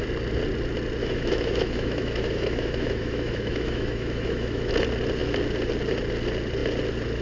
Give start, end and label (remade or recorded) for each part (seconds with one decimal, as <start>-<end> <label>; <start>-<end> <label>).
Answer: 0.0-1.0 recorded; 1.0-4.7 remade; 4.7-7.2 recorded